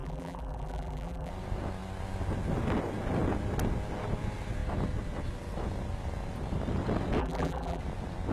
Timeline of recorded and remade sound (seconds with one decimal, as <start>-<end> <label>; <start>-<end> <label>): 0.0-1.3 remade; 1.3-7.2 recorded; 7.2-7.8 remade; 7.8-8.3 recorded

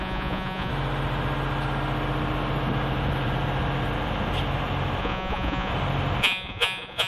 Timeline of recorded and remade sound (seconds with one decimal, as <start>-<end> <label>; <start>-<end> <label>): 0.0-0.7 remade; 0.7-5.0 recorded; 5.0-5.7 remade; 5.7-6.2 recorded; 6.2-7.1 remade

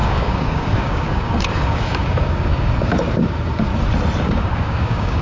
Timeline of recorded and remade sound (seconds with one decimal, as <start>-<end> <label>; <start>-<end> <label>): 0.0-3.7 remade; 3.7-4.2 recorded; 4.2-5.2 remade

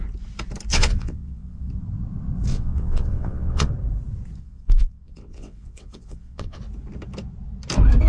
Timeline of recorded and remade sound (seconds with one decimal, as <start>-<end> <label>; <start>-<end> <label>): 0.0-0.7 recorded; 0.7-1.7 remade; 1.7-2.5 recorded; 2.5-3.7 remade; 3.7-4.4 recorded; 4.4-6.6 remade; 6.6-8.1 recorded

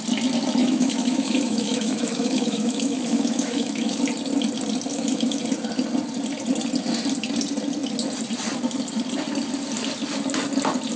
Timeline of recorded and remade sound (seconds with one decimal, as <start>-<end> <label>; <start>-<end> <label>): 0.0-0.6 recorded; 0.6-4.0 remade; 4.0-4.9 recorded; 4.9-5.4 remade; 5.4-11.0 recorded